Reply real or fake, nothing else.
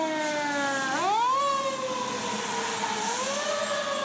real